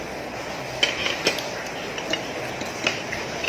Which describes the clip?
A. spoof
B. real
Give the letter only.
B